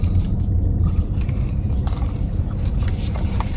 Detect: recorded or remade remade